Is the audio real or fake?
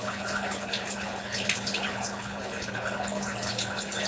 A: fake